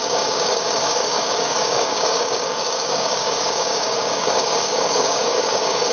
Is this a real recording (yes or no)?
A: no